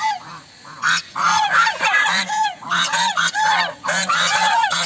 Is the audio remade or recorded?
remade